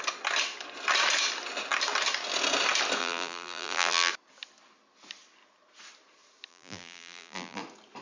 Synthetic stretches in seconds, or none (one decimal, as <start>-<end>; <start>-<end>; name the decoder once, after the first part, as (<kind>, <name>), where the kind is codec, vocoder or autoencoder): 3.0-4.1 (vocoder, BigVGAN v2); 6.5-7.6